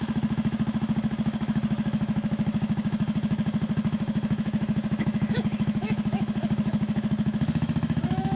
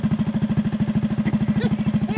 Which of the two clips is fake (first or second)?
first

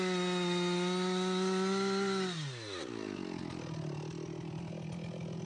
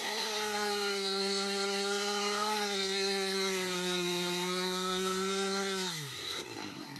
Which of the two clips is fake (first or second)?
second